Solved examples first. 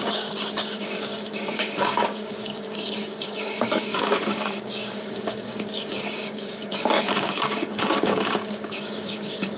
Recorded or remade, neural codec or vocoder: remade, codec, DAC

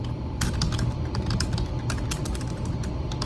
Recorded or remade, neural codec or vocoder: recorded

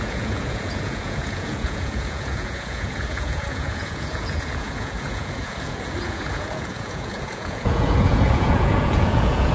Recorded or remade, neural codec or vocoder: remade, vocoder, Vocos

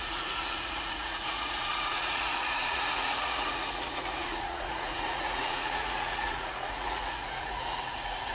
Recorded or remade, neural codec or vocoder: remade, vocoder, Vocos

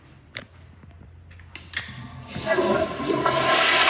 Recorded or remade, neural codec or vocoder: recorded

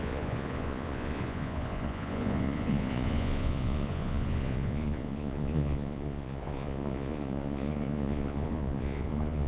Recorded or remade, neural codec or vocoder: remade, vocoder, Vocos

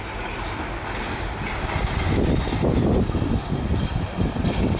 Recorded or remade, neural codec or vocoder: recorded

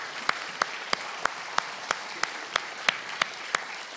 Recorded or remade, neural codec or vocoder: remade, vocoder, BigVGAN v2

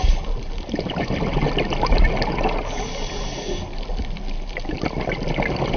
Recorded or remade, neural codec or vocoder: recorded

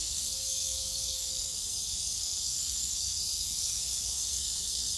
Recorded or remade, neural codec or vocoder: remade, codec, SNAC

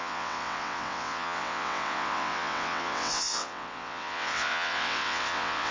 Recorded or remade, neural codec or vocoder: remade, vocoder, WaveNeXt